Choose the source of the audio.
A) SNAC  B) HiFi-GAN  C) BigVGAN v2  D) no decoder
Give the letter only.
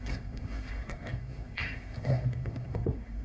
A